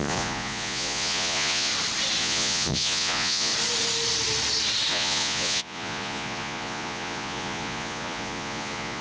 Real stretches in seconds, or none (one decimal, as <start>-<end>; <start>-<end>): 1.7-2.2; 3.5-4.9